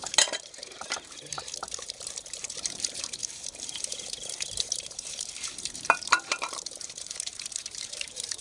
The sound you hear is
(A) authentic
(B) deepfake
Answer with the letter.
B